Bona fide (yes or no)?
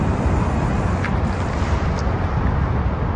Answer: yes